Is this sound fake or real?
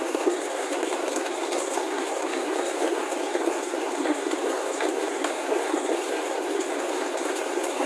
fake